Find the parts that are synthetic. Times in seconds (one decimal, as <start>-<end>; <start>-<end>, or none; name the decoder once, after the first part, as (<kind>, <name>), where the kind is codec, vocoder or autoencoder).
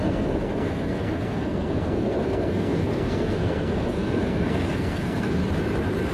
0.0-5.4 (codec, SNAC)